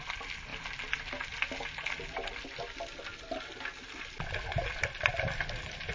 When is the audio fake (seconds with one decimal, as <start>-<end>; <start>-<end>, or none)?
none